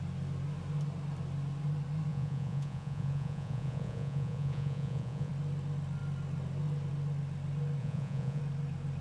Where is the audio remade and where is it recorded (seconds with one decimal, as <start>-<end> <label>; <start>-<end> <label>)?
0.0-2.1 recorded; 2.1-5.3 remade; 5.3-7.8 recorded; 7.8-8.4 remade; 8.4-9.0 recorded